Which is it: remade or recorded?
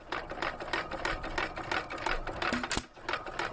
recorded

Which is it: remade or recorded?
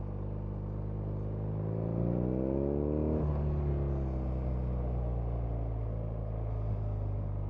recorded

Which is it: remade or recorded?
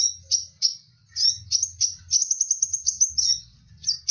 recorded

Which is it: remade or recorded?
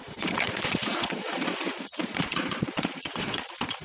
remade